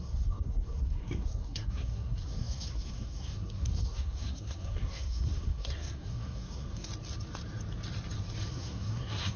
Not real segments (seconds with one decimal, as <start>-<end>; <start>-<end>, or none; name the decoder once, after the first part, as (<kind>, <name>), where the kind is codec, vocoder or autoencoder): 0.0-6.9 (codec, SNAC); 8.5-9.4